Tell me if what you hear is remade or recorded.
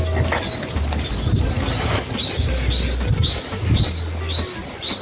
recorded